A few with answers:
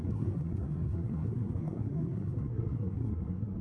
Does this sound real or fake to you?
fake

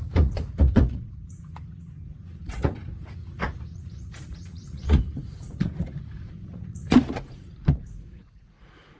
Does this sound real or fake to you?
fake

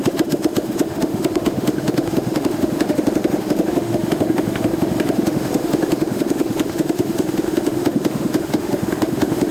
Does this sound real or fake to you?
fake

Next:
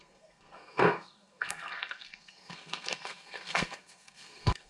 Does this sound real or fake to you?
fake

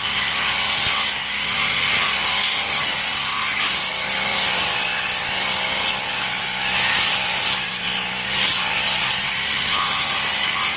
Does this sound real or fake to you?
real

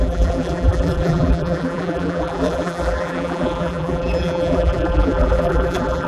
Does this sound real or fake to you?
fake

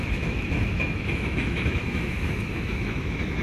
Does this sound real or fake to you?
fake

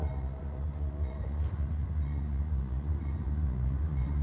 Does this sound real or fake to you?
fake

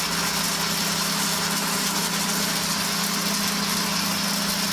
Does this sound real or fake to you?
real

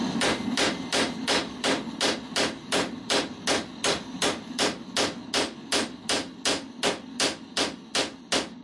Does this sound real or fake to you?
real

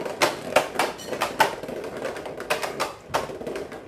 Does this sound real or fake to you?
real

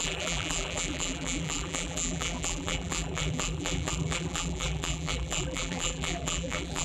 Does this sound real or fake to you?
fake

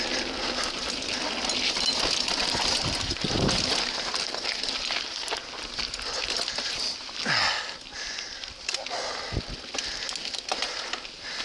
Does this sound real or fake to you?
real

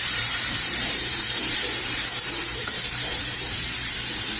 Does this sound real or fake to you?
fake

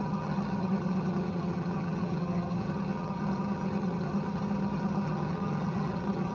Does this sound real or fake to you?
fake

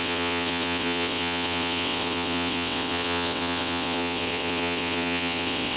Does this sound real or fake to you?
fake